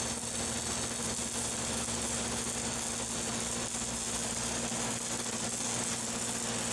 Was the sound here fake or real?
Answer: real